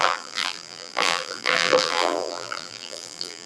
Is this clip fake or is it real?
fake